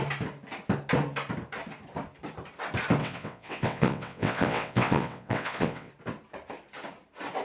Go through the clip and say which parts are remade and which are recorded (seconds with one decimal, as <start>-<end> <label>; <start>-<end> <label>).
0.0-3.0 recorded; 3.0-5.9 remade; 5.9-7.4 recorded